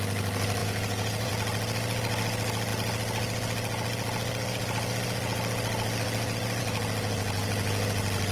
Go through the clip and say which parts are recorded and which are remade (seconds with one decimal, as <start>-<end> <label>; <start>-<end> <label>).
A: 0.0-0.6 recorded; 0.6-1.3 remade; 1.3-8.3 recorded